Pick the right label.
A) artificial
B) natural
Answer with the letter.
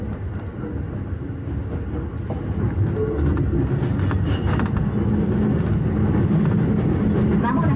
B